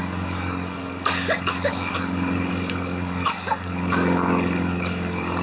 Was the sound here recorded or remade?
remade